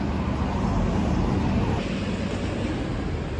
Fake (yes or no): no